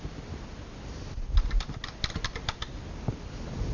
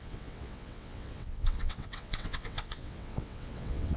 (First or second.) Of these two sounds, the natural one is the first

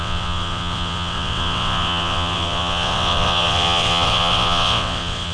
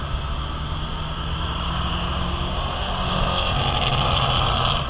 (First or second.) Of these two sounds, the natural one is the second